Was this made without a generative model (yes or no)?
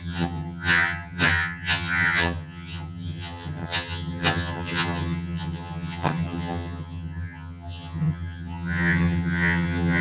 no